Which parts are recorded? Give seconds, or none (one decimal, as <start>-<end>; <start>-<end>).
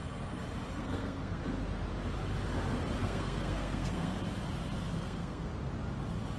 0.0-0.8; 1.4-3.0; 4.2-5.0; 5.5-6.4